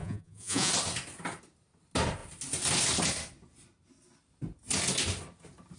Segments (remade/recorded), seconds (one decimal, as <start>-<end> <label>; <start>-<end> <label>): 0.0-0.7 remade; 0.7-5.8 recorded